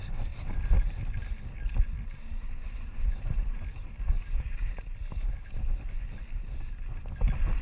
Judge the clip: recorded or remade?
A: recorded